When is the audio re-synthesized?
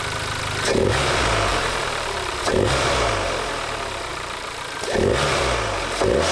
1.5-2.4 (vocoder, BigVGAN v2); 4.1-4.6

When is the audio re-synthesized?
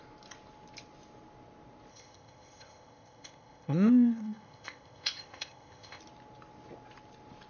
1.9-6.0 (codec, ZipCodec)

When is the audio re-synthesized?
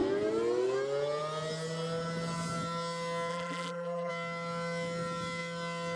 3.3-4.1 (vocoder, BigVGAN v2)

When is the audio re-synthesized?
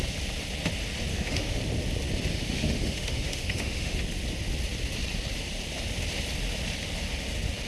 1.1-1.6 (autoencoder, DAC-VAE); 2.3-4.0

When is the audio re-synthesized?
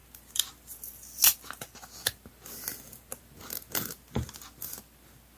none